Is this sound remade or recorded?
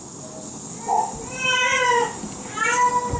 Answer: recorded